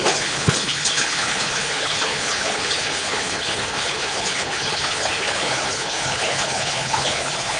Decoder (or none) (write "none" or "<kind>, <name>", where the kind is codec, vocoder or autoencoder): codec, HILCodec